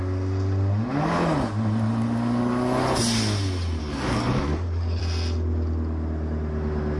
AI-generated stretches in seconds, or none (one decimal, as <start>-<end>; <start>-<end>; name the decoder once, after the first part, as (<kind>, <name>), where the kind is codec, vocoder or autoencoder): 3.8-5.0 (codec, DAC)